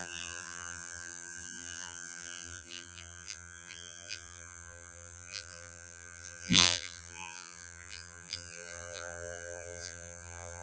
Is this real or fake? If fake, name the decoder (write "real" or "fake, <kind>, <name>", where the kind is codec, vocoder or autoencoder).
fake, vocoder, BigVGAN v2